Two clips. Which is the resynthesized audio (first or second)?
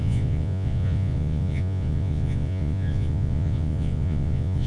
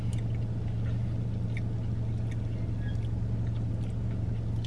first